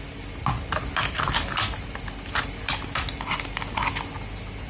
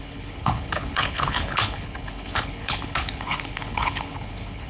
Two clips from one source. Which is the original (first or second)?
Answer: first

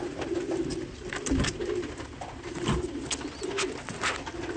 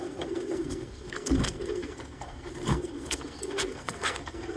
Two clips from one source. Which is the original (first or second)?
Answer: first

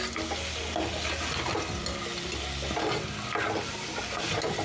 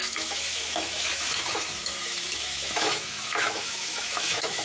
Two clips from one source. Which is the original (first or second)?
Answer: first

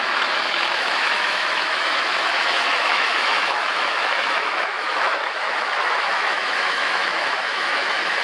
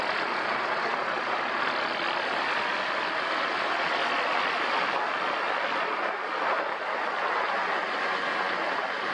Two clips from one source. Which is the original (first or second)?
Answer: second